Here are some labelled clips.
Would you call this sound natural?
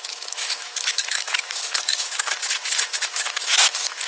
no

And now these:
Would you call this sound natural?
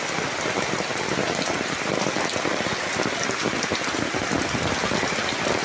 yes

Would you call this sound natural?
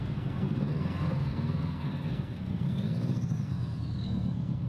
no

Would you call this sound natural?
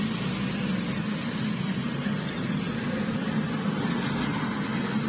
yes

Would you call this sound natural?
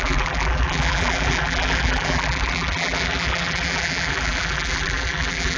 no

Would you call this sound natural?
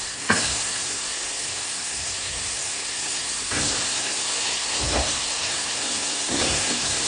no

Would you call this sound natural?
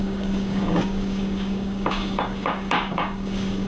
no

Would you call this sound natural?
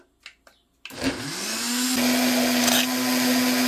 yes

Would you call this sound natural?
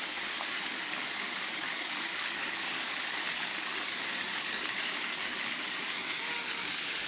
no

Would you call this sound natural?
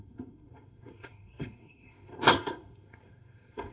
no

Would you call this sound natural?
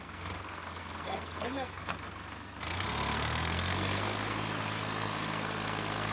no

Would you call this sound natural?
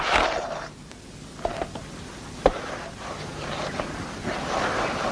yes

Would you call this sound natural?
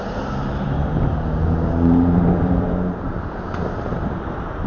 no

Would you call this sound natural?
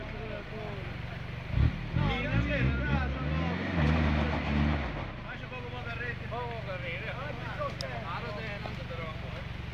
yes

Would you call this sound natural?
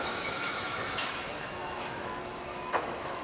no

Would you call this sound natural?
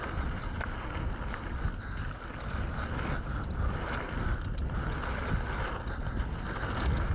yes